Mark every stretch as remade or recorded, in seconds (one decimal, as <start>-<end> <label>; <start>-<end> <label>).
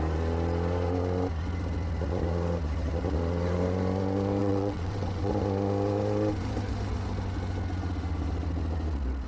0.0-4.4 recorded; 4.4-5.3 remade; 5.3-9.3 recorded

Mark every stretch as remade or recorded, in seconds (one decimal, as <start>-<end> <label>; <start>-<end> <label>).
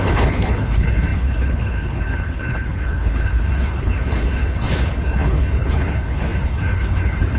0.0-7.4 remade